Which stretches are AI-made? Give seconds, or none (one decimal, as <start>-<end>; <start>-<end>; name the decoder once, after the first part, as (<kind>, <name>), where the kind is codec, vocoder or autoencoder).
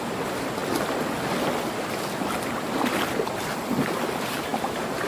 none